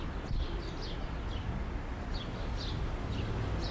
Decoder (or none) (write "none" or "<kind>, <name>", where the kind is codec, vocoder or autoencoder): none